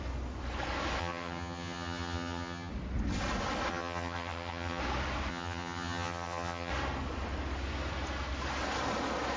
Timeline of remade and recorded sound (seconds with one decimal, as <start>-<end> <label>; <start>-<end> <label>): 0.0-1.0 recorded; 1.0-2.7 remade; 2.7-3.7 recorded; 3.7-4.8 remade; 4.8-5.3 recorded; 5.3-6.7 remade; 6.7-9.4 recorded